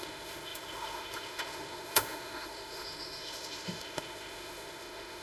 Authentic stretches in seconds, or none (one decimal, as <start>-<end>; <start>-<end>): none